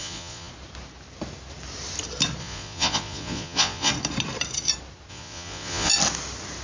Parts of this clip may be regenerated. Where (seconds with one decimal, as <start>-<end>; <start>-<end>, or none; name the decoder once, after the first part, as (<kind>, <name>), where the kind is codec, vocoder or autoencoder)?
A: 0.0-0.5 (vocoder, Vocos); 2.4-3.9; 5.1-5.9

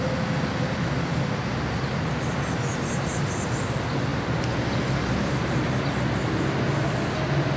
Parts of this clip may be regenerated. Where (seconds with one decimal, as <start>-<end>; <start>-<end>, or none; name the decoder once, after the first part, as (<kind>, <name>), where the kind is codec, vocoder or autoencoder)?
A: none

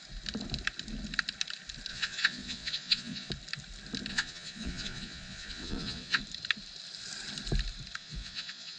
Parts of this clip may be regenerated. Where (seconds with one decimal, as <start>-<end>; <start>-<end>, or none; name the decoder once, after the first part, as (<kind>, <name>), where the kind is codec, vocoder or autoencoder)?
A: 1.9-3.3 (vocoder, Vocos); 4.1-6.2; 8.0-8.8

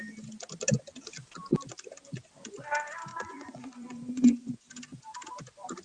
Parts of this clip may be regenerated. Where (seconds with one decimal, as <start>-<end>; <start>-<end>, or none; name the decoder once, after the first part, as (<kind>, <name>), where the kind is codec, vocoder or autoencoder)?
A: 3.1-4.7 (vocoder, Vocos)

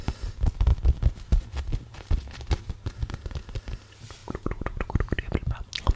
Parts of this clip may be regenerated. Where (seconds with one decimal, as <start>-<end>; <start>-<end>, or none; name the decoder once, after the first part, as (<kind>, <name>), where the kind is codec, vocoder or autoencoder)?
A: 4.2-4.9 (vocoder, Vocos)

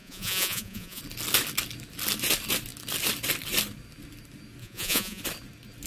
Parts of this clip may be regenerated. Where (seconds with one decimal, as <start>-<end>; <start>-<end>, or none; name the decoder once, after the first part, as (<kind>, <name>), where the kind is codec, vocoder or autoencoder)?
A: 0.0-1.0 (vocoder, Vocos); 4.6-5.2

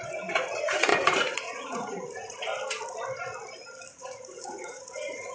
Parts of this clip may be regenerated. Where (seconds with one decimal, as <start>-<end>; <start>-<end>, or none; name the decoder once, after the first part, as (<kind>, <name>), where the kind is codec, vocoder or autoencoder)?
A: 0.0-2.5 (vocoder, Vocos); 3.9-5.3